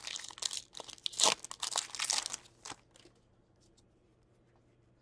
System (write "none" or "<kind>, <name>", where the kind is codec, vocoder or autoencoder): none